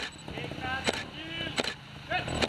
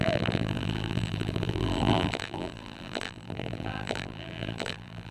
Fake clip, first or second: second